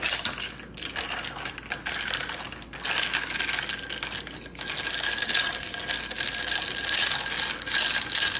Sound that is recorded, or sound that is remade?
recorded